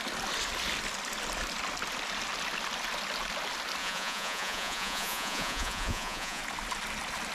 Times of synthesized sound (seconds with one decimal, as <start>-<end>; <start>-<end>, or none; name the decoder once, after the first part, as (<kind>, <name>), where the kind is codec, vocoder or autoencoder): 3.8-6.4 (vocoder, Vocos)